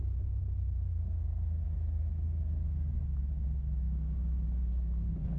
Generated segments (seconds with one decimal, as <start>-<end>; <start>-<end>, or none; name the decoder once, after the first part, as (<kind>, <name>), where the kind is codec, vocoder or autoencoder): none